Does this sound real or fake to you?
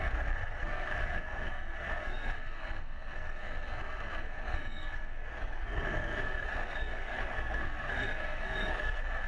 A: fake